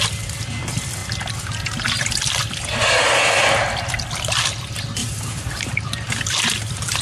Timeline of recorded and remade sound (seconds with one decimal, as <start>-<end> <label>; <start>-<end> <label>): 0.0-5.0 recorded; 5.0-6.2 remade; 6.2-7.0 recorded